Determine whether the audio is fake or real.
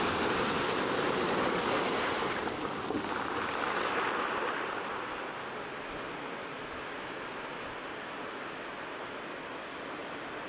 real